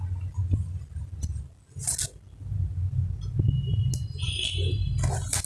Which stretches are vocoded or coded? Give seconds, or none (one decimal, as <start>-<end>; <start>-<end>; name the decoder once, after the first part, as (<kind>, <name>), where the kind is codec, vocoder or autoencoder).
none